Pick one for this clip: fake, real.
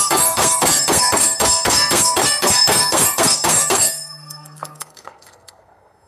fake